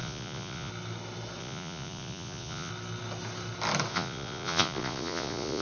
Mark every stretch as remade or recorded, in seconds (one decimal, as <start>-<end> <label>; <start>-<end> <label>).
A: 0.0-0.7 remade; 0.7-1.4 recorded; 1.4-2.7 remade; 2.7-3.9 recorded; 3.9-5.6 remade